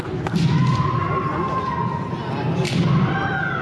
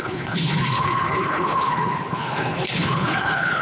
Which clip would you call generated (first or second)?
second